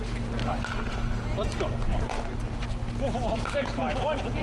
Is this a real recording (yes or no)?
yes